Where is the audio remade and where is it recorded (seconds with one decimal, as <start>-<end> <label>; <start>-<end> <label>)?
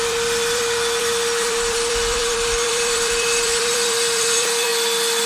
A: 0.0-4.7 remade; 4.7-5.3 recorded